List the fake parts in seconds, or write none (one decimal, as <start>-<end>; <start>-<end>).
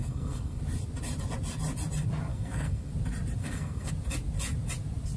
0.0-0.6; 2.3-2.9; 3.4-3.9